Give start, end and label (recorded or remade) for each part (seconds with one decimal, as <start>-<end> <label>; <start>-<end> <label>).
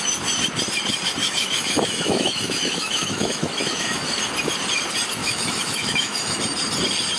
0.0-1.2 recorded; 1.2-4.0 remade; 4.0-5.2 recorded; 5.2-6.4 remade; 6.4-7.2 recorded